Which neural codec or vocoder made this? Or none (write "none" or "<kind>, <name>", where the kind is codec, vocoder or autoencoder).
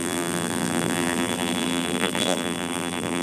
vocoder, BigVGAN v2